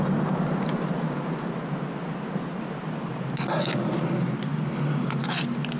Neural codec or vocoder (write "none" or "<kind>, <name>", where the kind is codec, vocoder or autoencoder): none